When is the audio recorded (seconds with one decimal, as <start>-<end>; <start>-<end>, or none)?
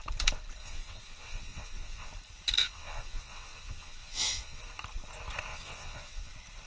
0.0-0.6; 2.1-2.6; 4.6-5.5; 6.3-6.7